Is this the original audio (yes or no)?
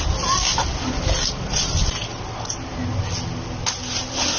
yes